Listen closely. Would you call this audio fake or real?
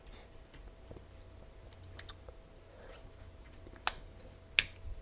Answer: real